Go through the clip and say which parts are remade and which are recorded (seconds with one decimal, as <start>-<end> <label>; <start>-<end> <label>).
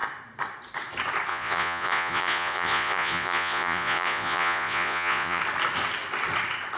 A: 0.0-1.3 recorded; 1.3-5.4 remade; 5.4-6.8 recorded